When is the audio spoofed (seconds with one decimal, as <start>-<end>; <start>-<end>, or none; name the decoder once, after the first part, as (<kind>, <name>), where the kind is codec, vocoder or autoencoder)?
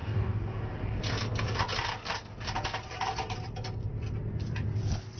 0.0-1.0 (codec, DAC)